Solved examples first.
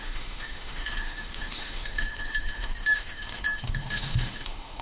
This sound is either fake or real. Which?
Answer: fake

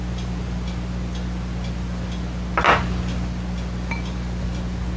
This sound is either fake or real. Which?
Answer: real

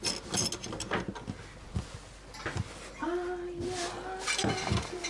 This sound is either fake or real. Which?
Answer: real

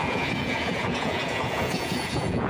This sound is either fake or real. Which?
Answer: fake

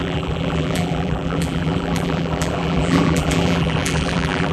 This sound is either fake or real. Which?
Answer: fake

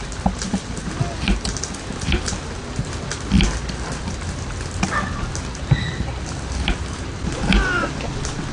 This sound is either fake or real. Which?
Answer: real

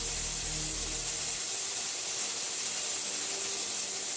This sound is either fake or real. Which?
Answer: real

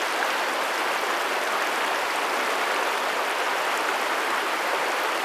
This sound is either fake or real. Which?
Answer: real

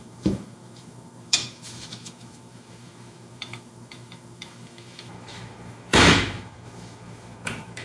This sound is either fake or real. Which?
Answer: fake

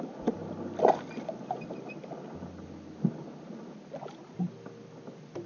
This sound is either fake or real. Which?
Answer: real